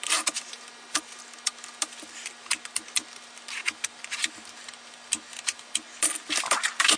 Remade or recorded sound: recorded